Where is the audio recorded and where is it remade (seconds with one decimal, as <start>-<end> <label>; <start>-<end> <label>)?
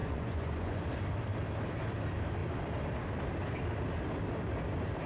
0.0-0.8 remade; 0.8-5.1 recorded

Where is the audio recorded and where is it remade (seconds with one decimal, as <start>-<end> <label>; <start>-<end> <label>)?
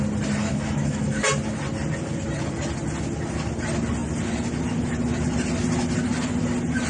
0.0-0.4 recorded; 0.4-1.2 remade; 1.2-6.9 recorded